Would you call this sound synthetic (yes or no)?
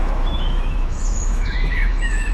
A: yes